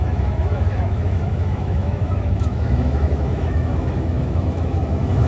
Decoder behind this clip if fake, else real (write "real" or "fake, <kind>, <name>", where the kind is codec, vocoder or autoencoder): fake, autoencoder, DAC-VAE